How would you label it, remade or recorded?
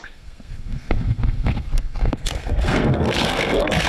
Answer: remade